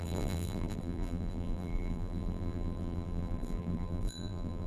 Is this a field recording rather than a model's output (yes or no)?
no